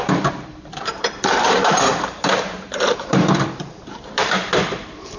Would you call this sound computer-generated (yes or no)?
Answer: yes